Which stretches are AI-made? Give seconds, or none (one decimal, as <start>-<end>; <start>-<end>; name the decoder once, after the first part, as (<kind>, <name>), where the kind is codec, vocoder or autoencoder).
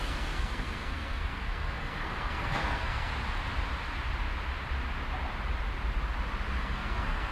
0.0-3.1 (codec, SNAC); 6.6-7.3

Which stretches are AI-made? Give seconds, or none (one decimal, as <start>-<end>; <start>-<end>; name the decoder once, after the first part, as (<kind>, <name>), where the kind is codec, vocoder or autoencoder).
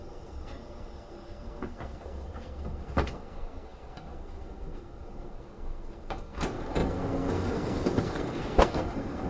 0.0-9.3 (codec, SNAC)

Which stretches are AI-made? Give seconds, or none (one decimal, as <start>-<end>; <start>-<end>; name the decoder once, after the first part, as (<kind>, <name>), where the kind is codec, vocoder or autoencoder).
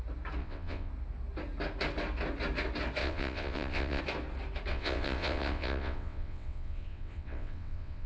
0.4-0.9 (vocoder, WaveNeXt); 3.0-4.0; 4.7-8.1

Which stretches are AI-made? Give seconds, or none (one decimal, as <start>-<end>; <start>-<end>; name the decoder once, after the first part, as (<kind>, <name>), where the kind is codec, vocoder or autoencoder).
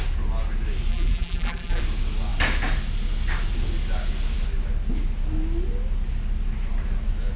0.9-1.8 (vocoder, BigVGAN v2)